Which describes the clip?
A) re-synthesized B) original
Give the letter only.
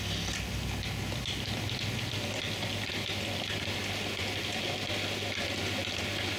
B